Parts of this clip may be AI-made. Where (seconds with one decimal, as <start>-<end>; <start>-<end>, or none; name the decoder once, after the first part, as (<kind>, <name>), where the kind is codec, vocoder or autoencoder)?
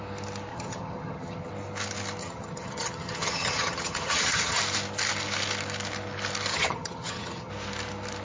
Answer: 0.5-1.5 (vocoder, HiFi-GAN); 2.2-4.6; 6.5-7.5